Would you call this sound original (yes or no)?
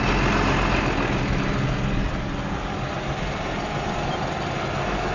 yes